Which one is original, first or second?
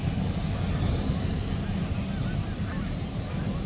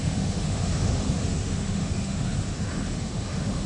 first